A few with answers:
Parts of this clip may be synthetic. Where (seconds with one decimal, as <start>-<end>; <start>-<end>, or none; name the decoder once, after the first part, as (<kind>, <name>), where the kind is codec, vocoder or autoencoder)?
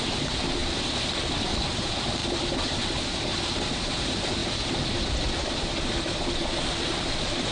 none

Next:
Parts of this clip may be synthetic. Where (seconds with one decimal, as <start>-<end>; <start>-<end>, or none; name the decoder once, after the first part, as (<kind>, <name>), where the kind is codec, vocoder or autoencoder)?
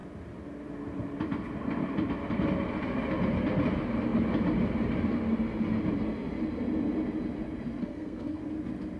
7.8-8.4 (codec, SNAC)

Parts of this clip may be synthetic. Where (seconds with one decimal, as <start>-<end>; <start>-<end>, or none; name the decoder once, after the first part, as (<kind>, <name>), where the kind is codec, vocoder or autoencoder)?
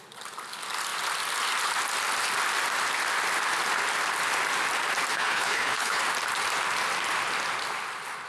5.1-6.0 (codec, HILCodec)